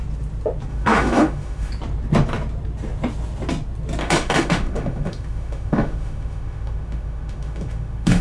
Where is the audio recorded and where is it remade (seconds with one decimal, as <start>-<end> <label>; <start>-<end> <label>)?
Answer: 0.0-0.7 recorded; 0.7-1.7 remade; 1.7-4.0 recorded; 4.0-8.2 remade